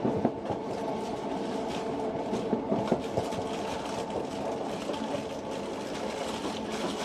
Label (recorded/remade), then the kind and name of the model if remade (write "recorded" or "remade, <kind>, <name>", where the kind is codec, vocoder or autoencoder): recorded